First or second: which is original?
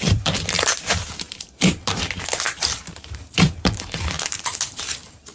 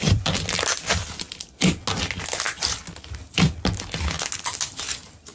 second